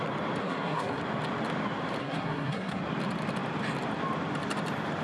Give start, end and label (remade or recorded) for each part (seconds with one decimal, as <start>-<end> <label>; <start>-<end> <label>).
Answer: 0.0-0.4 recorded; 0.4-1.0 remade; 1.0-2.0 recorded; 2.0-2.8 remade; 2.8-5.0 recorded